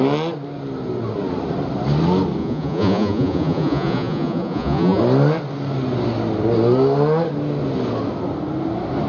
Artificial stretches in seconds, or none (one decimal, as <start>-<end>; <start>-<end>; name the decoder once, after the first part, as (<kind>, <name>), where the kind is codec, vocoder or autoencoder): 2.4-5.0 (vocoder, Vocos)